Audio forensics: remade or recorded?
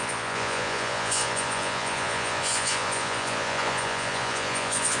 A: remade